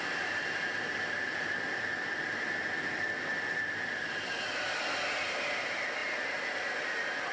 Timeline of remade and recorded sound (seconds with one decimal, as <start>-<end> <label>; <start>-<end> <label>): 0.0-7.3 recorded